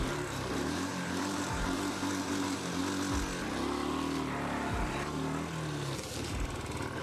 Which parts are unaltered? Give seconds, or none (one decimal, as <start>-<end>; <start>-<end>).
2.8-7.0